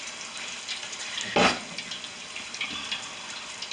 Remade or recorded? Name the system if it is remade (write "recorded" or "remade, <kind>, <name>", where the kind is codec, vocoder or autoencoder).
recorded